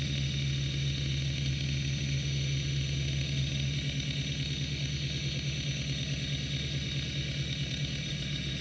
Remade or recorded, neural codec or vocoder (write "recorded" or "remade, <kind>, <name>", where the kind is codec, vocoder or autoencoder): remade, autoencoder, DAC-VAE